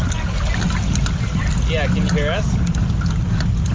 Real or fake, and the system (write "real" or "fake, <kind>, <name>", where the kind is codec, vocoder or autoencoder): real